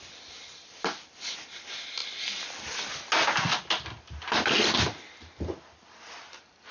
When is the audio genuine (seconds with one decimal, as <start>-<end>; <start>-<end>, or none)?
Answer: 0.0-6.7